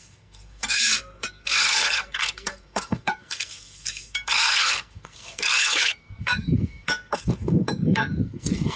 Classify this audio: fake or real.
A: fake